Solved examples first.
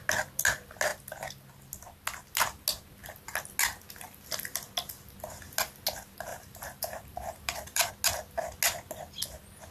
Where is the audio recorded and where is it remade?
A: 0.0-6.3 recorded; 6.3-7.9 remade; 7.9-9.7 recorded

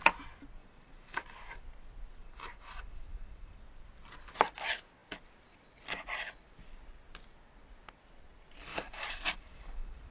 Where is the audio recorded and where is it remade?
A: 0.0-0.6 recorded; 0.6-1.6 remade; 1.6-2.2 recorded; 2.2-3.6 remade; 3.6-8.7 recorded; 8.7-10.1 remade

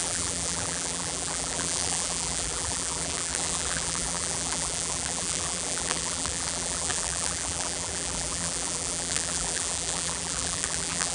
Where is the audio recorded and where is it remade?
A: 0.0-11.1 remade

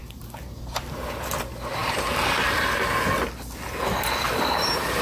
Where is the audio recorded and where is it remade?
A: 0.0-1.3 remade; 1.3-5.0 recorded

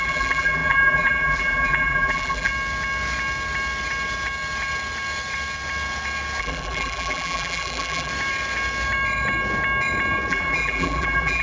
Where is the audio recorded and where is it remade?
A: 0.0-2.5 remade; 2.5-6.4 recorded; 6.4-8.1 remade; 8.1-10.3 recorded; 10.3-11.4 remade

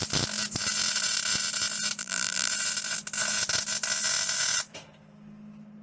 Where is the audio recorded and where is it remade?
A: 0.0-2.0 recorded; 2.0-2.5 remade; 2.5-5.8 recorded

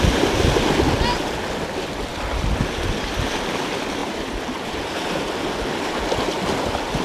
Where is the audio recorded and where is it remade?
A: 0.0-4.0 recorded; 4.0-5.2 remade; 5.2-7.0 recorded

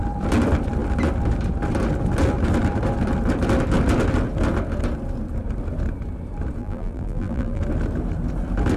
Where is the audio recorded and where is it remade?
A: 0.0-6.6 recorded; 6.6-7.6 remade; 7.6-8.8 recorded